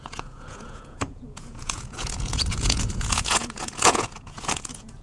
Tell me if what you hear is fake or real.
fake